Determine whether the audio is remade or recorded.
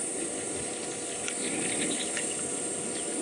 recorded